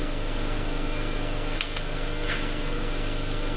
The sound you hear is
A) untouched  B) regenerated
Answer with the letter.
B